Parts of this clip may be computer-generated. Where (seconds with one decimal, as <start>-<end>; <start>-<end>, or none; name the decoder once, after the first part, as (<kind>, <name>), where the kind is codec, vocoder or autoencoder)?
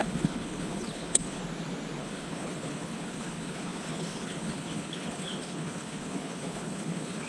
0.0-1.4 (codec, HILCodec); 2.0-7.3